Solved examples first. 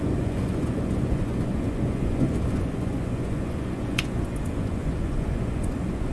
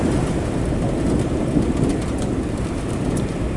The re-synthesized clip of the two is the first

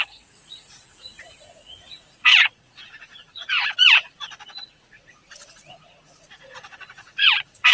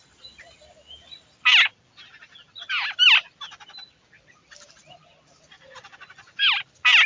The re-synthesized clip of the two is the first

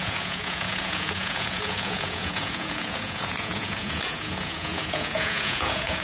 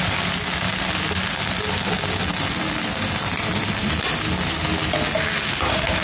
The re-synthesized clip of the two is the first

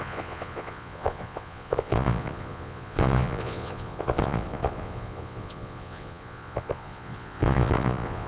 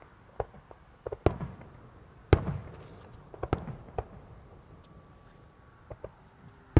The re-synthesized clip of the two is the first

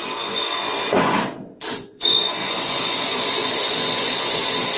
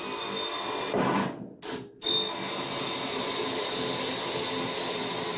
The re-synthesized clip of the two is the first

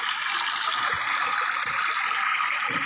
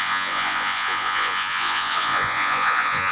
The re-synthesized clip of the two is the second